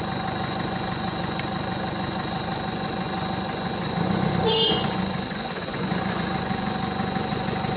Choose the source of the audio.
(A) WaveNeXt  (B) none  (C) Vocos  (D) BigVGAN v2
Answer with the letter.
C